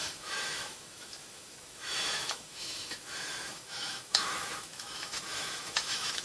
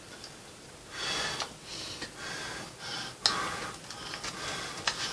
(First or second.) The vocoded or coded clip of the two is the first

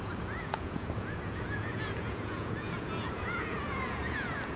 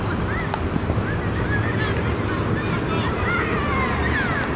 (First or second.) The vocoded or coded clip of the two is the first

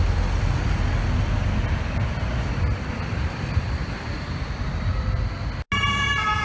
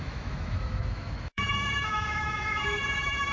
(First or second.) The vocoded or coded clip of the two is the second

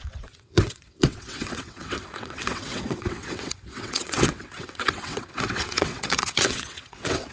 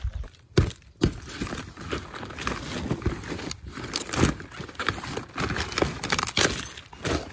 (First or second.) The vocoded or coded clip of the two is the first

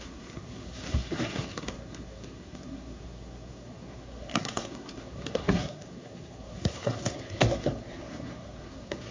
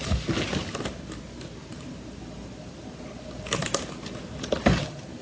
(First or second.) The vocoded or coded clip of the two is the first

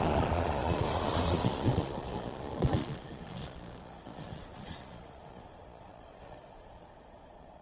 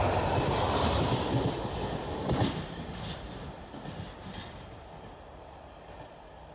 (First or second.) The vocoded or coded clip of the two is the first